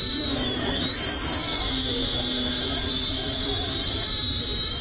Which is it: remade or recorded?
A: remade